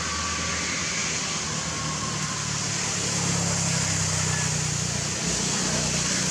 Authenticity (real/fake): real